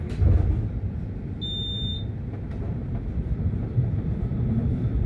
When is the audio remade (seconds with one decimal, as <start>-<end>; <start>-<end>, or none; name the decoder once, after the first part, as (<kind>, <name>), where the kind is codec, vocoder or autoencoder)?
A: none